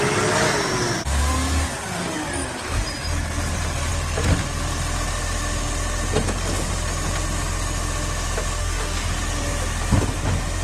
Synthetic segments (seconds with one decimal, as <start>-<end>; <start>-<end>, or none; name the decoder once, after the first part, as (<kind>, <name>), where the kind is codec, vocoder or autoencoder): 8.6-9.1 (codec, DAC)